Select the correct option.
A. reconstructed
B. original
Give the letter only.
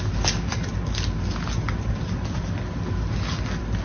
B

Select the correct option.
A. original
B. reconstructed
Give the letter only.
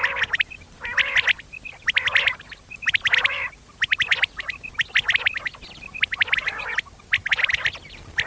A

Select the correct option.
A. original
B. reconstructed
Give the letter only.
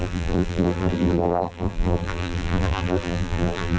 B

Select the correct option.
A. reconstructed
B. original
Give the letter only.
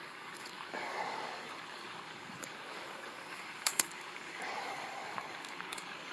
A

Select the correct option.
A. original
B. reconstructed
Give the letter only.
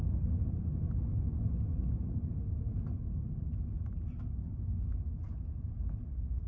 A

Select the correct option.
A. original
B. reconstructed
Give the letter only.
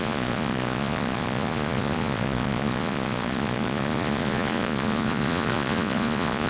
B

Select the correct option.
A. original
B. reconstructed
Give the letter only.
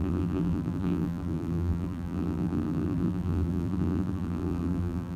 B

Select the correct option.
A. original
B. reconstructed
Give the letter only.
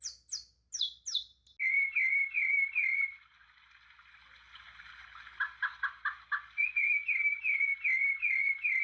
A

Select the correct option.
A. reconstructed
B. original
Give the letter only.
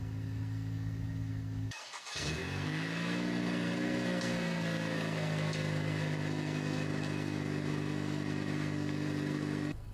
A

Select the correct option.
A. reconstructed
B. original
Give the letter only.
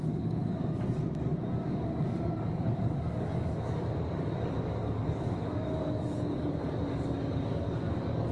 A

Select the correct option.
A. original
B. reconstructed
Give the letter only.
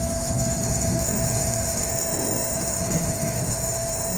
B